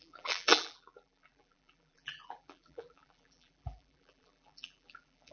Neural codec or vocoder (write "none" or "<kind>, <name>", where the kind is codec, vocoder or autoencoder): vocoder, BigVGAN v2